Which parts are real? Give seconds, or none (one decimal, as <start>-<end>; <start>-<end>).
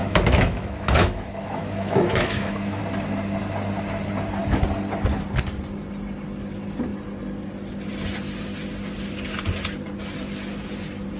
2.8-11.2